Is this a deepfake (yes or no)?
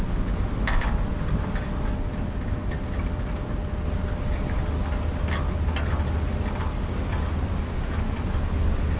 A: no